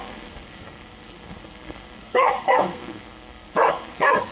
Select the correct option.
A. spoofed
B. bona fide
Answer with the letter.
A